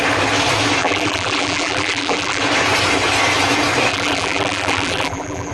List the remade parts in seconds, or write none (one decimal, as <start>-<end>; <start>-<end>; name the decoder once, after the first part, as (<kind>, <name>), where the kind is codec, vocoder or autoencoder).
0.8-2.4 (vocoder, BigVGAN v2); 3.9-5.5